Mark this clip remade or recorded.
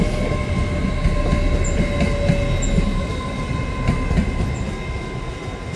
recorded